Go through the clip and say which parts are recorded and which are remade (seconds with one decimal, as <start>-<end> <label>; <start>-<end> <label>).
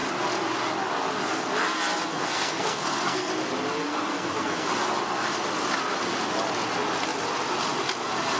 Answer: 0.0-2.1 recorded; 2.1-3.3 remade; 3.3-3.8 recorded; 3.8-4.7 remade; 4.7-8.4 recorded